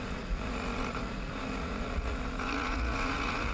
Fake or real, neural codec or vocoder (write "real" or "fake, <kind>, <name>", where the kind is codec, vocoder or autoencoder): fake, vocoder, Vocos